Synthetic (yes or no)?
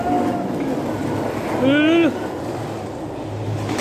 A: no